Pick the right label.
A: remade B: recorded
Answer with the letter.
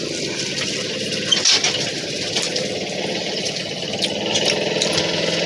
B